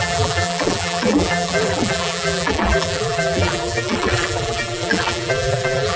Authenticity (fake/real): fake